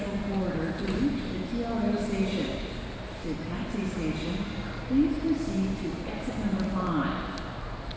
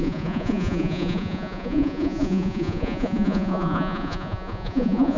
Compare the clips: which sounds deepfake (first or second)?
second